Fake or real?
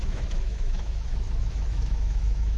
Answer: fake